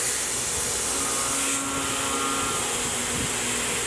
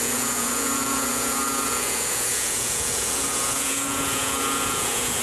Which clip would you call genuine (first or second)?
first